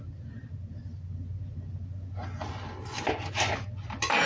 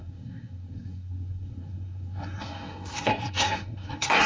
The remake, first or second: second